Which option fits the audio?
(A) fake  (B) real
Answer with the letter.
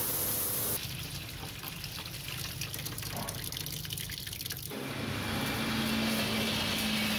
B